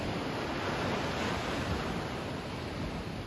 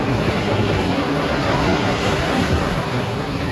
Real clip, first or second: first